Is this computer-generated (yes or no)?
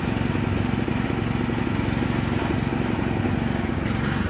no